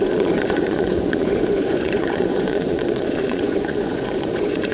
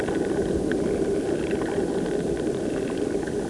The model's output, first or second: first